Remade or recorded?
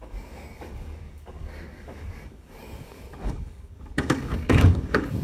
remade